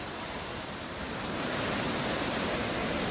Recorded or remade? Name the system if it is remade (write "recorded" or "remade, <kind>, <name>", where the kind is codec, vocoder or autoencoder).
remade, vocoder, BigVGAN v2